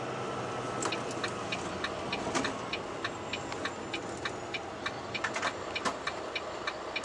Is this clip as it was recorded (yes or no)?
yes